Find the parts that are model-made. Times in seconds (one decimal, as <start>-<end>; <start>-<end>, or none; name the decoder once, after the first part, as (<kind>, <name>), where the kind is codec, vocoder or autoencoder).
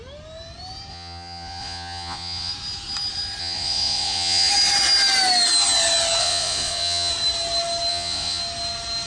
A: 0.9-2.5 (vocoder, Vocos); 3.4-4.5; 6.2-7.1; 7.9-8.4